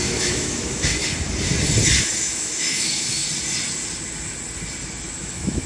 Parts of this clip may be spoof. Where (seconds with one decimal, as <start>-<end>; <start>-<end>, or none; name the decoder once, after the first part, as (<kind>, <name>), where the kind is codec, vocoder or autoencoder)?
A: 0.0-1.0 (autoencoder, DAC-VAE); 2.0-3.2; 5.2-5.7